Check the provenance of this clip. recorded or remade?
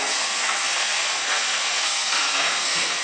remade